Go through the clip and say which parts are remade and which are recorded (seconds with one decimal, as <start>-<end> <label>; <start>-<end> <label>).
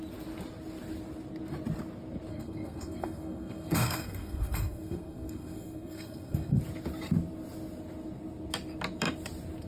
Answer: 0.0-2.3 recorded; 2.3-6.6 remade; 6.6-9.7 recorded